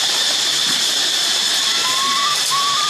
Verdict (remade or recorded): recorded